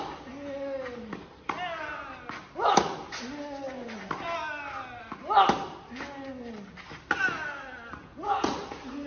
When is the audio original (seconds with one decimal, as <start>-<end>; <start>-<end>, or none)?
0.0-8.0; 8.5-9.1